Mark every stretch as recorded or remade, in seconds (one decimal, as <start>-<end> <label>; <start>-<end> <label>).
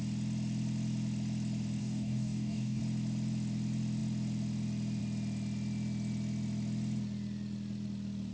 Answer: 0.0-1.8 recorded; 1.8-2.8 remade; 2.8-8.3 recorded